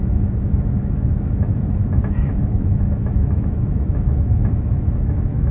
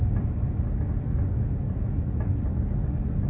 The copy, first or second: first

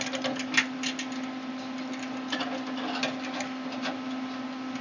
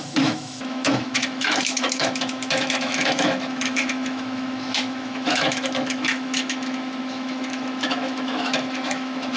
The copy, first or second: second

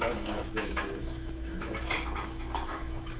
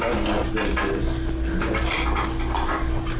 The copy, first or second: first